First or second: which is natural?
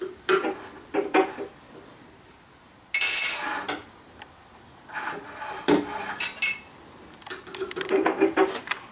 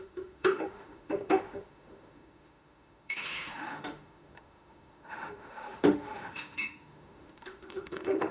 first